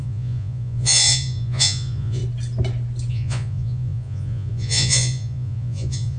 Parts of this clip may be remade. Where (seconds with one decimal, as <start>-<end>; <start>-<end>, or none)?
0.0-2.2; 3.1-6.2